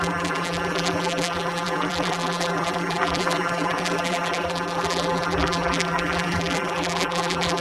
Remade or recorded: remade